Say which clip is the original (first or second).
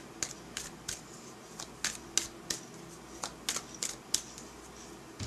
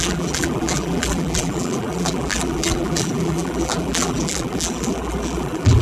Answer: first